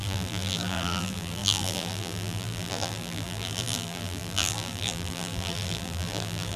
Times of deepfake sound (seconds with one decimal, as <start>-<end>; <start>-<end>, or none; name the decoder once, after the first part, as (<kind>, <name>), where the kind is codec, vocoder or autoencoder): 0.0-6.6 (vocoder, BigVGAN v2)